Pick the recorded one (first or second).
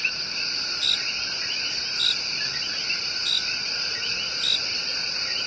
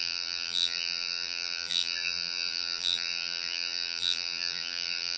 first